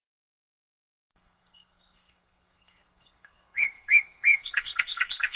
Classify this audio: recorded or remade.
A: remade